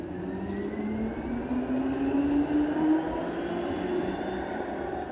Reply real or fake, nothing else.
real